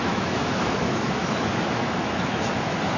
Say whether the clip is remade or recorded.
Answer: remade